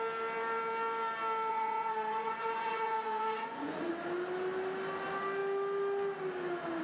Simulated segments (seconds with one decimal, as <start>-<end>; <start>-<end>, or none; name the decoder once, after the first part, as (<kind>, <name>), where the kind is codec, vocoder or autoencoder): 1.5-3.9 (vocoder, Vocos)